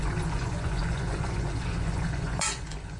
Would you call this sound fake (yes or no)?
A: yes